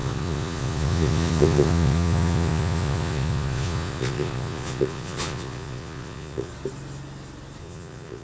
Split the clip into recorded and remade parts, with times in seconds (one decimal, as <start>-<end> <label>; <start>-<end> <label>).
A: 0.0-6.5 remade; 6.5-7.6 recorded; 7.6-8.2 remade